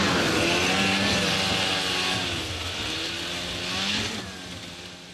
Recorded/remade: recorded